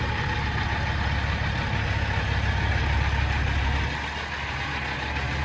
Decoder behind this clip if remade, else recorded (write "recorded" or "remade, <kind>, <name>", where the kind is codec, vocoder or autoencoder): recorded